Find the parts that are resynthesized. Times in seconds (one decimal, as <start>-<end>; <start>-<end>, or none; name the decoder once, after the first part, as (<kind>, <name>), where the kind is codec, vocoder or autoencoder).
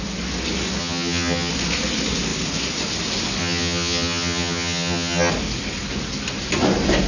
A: 0.8-1.5 (vocoder, HiFi-GAN); 3.4-5.3